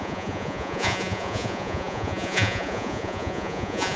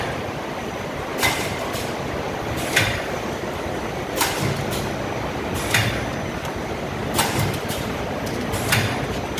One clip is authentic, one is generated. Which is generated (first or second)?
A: first